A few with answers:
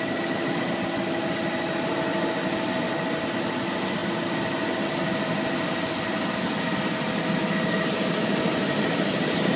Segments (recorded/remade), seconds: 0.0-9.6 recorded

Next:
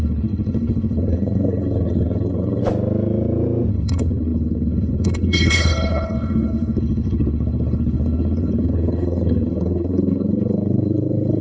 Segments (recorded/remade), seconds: 0.0-2.6 remade; 2.6-3.7 recorded; 3.7-11.4 remade